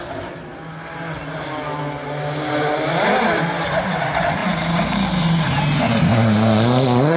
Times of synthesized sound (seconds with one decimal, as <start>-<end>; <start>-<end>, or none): none